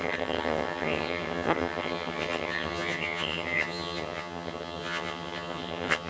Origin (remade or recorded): remade